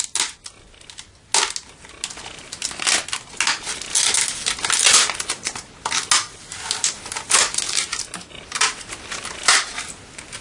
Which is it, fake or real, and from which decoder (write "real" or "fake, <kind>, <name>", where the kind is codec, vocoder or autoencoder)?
real